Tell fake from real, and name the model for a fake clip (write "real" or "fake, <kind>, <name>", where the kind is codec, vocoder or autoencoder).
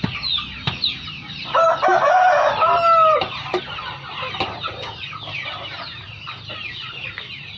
real